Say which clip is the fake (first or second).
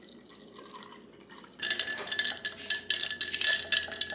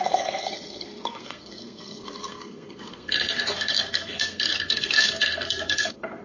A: second